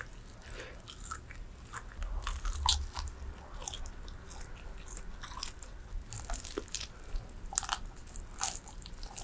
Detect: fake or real real